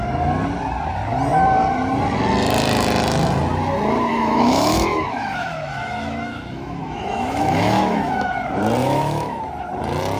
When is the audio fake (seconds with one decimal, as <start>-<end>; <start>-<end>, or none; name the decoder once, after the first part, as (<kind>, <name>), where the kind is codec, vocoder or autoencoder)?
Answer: 4.1-8.3 (autoencoder, DAC-VAE); 8.8-9.4